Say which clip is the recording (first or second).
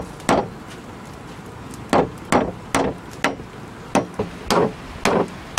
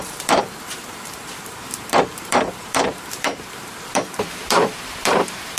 first